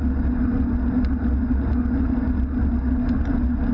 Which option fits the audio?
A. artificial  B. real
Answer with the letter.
B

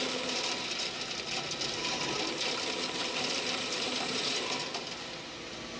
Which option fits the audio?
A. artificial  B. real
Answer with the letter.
B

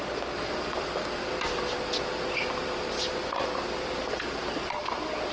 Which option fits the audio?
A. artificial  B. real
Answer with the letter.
B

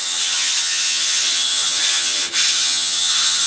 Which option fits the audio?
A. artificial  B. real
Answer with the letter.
A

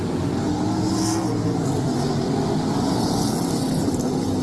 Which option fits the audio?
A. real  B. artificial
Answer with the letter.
A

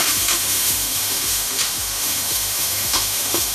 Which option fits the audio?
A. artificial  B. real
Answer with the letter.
A